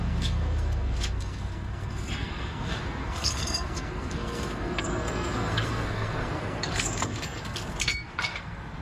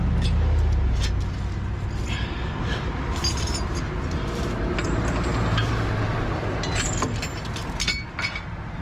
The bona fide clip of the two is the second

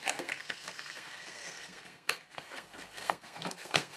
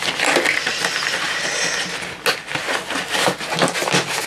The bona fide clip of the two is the second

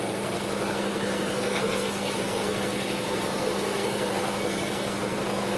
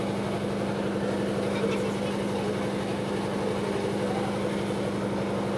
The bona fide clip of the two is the second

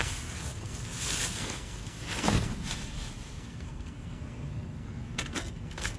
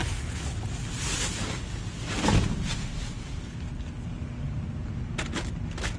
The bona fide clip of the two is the second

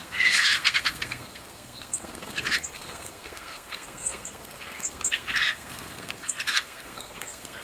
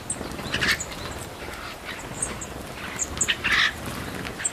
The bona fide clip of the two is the second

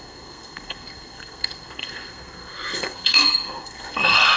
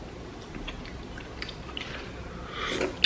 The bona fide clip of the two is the second